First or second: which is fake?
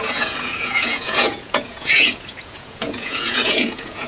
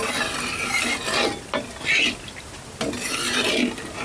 first